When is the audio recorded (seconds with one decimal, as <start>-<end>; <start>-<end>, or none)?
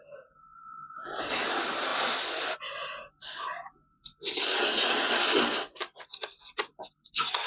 0.0-7.5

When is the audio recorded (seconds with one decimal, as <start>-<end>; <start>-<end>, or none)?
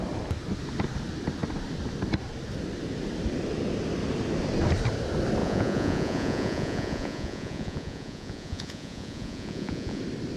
0.0-5.4; 10.0-10.4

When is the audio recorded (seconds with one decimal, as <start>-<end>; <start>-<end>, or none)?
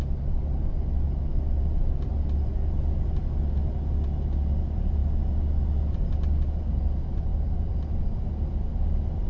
0.0-9.3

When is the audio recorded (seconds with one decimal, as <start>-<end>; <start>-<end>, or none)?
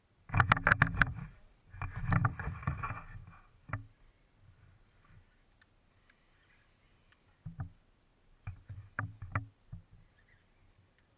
0.0-0.9; 1.6-2.3; 2.8-11.2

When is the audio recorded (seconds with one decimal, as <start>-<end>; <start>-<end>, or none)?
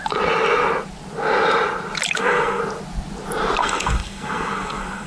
0.0-2.2; 2.6-3.6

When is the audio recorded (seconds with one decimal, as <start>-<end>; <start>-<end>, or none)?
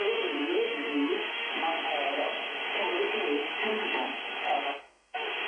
1.5-4.8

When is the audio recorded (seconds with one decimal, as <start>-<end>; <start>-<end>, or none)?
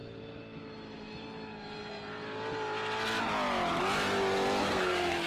0.0-4.6